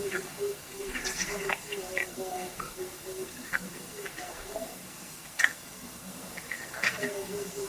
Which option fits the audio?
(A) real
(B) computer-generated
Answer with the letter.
B